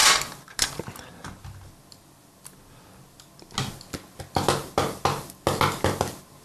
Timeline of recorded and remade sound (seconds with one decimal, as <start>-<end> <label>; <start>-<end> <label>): 0.0-6.4 recorded